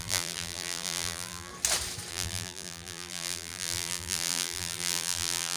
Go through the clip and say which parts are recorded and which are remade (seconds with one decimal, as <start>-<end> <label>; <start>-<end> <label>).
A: 0.0-1.5 remade; 1.5-2.1 recorded; 2.1-5.6 remade